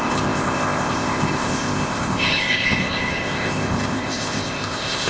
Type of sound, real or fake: fake